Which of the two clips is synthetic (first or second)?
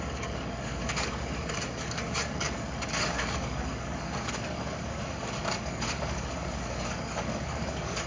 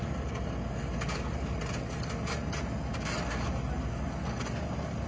first